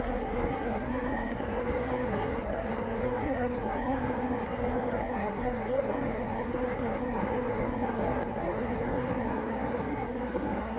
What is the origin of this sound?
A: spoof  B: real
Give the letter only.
A